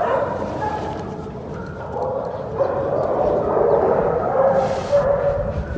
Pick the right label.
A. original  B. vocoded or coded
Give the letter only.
B